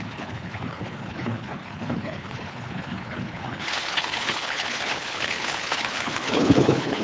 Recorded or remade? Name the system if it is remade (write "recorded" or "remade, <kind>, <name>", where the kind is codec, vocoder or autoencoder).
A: remade, codec, HILCodec